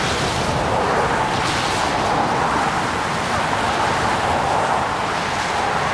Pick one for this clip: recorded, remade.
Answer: recorded